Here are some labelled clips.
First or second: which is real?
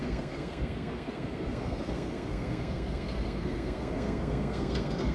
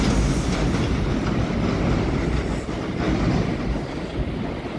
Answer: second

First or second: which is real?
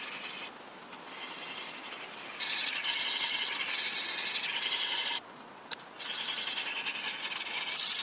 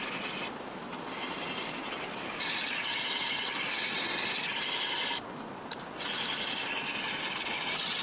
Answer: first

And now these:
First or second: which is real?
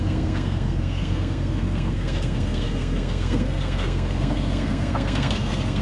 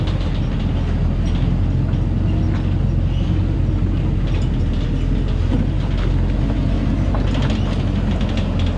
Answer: second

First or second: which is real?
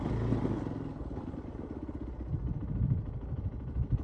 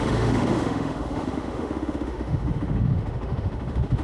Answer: first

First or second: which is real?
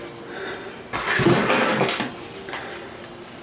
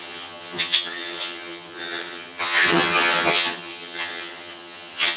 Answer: first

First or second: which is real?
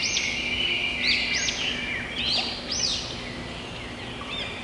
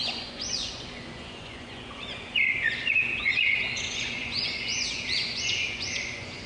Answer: first